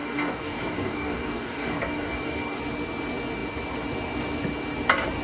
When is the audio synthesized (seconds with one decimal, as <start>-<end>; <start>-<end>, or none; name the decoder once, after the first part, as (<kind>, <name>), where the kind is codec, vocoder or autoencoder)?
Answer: 0.0-2.6 (codec, DAC)